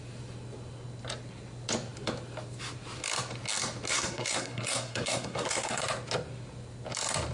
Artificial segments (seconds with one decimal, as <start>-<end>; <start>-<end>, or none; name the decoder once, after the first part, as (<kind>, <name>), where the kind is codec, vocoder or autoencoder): 3.9-5.8 (codec, SNAC)